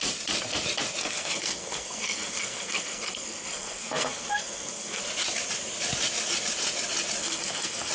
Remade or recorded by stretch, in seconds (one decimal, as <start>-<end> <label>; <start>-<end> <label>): 0.0-1.0 recorded; 1.0-5.0 remade; 5.0-7.2 recorded; 7.2-7.9 remade